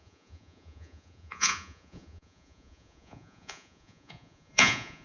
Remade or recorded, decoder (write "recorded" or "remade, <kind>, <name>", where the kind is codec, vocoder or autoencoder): remade, vocoder, Vocos